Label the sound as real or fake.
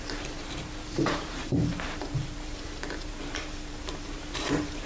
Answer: fake